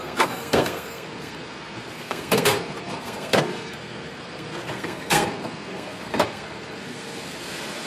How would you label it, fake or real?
fake